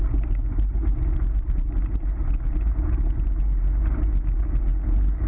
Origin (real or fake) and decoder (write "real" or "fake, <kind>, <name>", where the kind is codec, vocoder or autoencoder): real